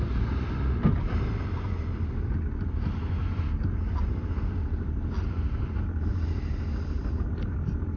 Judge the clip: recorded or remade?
recorded